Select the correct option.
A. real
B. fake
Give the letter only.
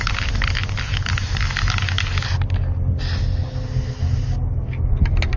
A